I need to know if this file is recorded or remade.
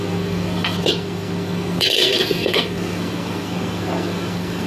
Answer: remade